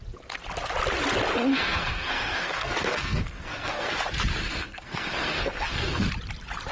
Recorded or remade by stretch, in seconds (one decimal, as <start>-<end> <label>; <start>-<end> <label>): 0.0-1.5 recorded; 1.5-3.9 remade; 3.9-4.4 recorded; 4.4-6.1 remade; 6.1-6.7 recorded